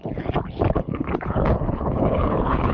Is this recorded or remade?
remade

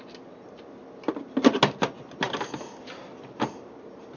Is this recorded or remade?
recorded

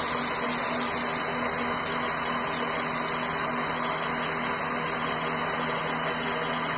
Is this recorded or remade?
recorded